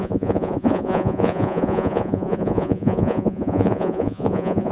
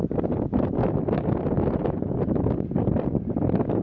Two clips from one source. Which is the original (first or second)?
second